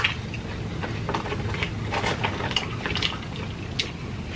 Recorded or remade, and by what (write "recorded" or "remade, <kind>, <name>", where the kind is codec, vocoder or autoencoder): recorded